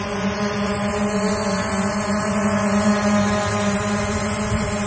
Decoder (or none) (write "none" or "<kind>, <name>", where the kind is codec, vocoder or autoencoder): vocoder, BigVGAN v2